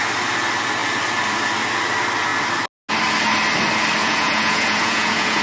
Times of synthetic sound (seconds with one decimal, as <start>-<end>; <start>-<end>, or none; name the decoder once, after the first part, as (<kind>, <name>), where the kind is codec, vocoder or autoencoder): 4.0-5.4 (vocoder, Vocos)